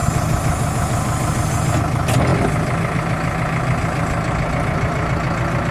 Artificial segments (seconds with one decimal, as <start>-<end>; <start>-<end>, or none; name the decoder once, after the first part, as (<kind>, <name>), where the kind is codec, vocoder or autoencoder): none